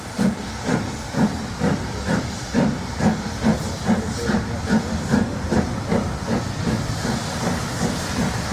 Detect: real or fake real